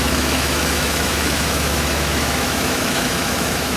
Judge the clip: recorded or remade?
remade